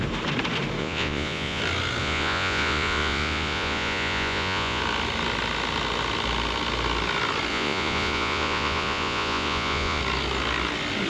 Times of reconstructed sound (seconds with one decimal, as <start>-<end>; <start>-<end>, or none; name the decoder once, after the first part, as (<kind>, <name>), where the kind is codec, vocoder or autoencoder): 0.8-1.6 (vocoder, Vocos); 2.0-4.8; 7.5-10.0